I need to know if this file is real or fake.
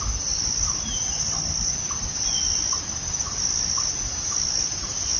real